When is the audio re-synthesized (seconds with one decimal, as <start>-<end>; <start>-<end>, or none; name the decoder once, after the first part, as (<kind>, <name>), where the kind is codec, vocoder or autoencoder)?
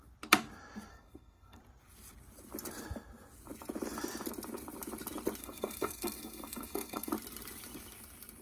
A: 0.9-1.6 (codec, SNAC); 5.4-7.1